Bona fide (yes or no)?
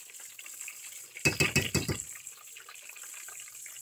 yes